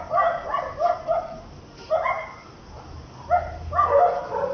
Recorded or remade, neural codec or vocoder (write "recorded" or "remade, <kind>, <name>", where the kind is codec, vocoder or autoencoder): recorded